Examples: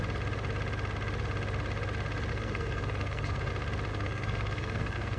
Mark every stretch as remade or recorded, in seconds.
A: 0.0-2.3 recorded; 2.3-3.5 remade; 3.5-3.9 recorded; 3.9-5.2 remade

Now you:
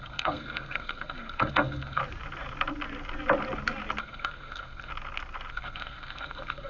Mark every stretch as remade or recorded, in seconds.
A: 0.0-2.0 remade; 2.0-4.0 recorded; 4.0-4.9 remade; 4.9-5.5 recorded; 5.5-6.7 remade

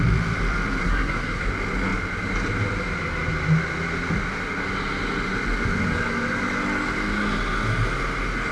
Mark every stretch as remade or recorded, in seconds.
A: 0.0-0.8 recorded; 0.8-1.5 remade; 1.5-8.5 recorded

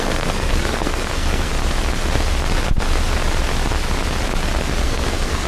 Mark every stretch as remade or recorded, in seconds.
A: 0.0-1.5 remade; 1.5-4.8 recorded; 4.8-5.5 remade

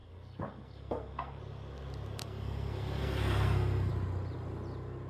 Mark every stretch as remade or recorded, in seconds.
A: 0.0-1.4 remade; 1.4-2.2 recorded; 2.2-3.9 remade; 3.9-5.1 recorded